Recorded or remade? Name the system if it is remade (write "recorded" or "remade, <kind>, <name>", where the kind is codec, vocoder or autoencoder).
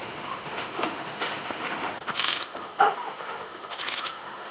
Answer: remade, autoencoder, DAC-VAE